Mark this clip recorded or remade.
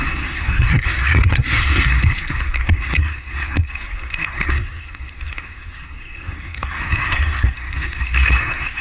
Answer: remade